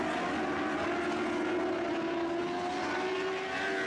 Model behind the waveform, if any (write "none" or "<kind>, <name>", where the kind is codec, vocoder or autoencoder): none